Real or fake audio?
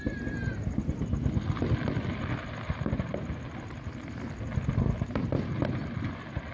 fake